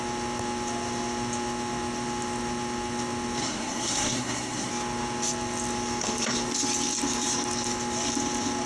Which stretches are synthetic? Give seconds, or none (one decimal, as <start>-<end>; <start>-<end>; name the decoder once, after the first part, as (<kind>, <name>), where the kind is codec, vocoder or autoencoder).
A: 3.4-4.7 (codec, SNAC)